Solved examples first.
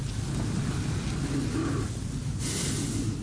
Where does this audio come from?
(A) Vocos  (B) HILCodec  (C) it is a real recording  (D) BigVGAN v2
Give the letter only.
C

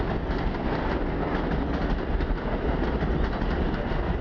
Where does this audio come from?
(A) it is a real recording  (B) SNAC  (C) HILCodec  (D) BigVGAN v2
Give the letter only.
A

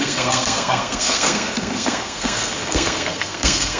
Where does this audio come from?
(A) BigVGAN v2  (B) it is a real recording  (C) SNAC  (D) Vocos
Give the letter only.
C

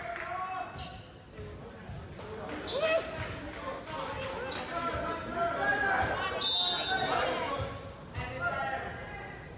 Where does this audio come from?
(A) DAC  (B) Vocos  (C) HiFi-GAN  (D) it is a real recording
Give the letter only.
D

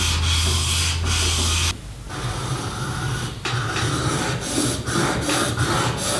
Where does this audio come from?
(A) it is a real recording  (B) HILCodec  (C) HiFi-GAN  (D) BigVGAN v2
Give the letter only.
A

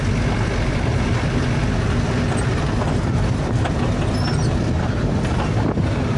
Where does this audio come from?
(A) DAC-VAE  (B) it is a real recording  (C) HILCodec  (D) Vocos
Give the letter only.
B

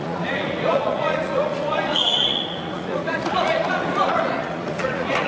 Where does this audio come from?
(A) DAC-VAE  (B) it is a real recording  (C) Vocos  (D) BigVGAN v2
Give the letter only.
C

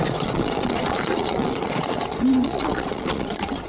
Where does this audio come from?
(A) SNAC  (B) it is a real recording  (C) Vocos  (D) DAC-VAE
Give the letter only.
C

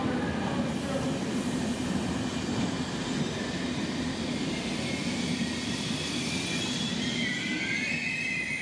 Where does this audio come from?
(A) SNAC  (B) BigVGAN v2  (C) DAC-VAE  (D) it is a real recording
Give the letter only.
D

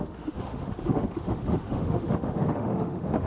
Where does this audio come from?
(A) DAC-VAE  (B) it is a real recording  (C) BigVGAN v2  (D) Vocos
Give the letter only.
A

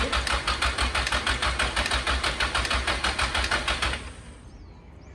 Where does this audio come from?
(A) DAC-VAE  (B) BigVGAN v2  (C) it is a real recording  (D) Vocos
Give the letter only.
C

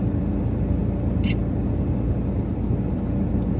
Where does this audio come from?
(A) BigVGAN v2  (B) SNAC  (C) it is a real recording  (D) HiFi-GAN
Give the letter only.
C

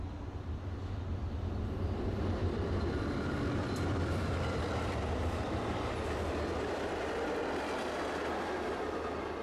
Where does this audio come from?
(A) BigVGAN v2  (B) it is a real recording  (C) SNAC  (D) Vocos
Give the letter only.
A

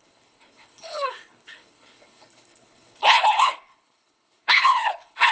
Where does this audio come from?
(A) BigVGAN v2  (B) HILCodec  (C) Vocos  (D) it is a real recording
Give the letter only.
B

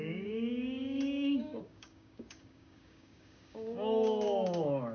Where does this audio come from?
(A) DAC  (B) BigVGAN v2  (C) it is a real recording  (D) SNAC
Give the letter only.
A